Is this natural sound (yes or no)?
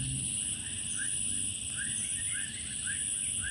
yes